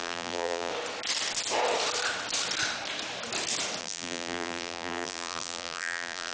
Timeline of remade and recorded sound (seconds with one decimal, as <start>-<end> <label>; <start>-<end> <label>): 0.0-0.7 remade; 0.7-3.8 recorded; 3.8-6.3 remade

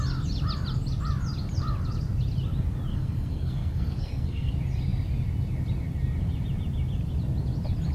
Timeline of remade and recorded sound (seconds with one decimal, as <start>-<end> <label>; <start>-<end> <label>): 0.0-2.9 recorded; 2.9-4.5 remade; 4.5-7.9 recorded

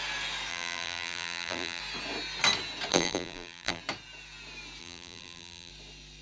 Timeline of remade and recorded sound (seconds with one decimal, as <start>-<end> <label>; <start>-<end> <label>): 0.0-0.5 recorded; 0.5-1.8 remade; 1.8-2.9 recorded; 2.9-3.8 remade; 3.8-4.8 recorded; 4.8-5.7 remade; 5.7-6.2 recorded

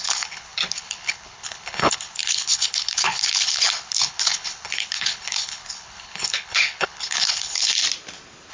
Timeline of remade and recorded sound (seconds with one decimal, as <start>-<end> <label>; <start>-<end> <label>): 0.0-7.8 remade; 7.8-8.5 recorded